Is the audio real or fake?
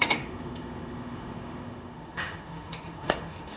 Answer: fake